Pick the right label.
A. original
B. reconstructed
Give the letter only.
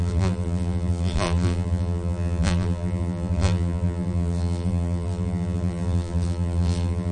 B